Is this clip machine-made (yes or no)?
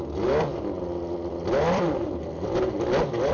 no